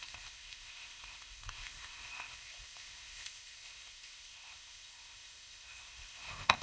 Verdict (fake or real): fake